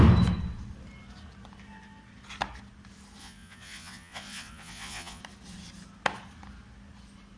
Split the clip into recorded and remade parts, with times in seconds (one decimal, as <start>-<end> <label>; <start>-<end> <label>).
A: 0.0-3.2 recorded; 3.2-5.2 remade; 5.2-7.4 recorded